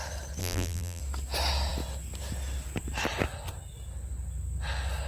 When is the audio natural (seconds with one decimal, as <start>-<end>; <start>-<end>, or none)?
0.0-0.4; 1.0-5.1